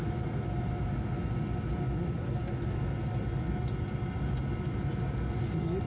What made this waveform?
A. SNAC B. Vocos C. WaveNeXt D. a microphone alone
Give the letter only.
D